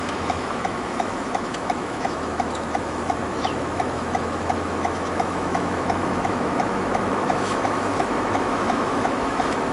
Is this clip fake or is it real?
fake